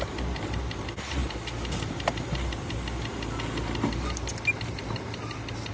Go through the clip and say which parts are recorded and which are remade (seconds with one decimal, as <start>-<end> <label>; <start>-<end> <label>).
0.0-5.7 recorded